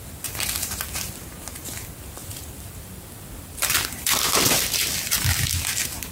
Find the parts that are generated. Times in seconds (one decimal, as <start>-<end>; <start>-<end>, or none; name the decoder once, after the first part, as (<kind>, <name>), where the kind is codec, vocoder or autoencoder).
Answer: 2.2-6.1 (vocoder, BigVGAN v2)